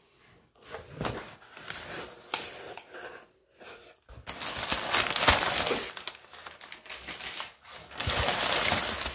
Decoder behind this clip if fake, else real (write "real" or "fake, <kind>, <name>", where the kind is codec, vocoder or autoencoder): real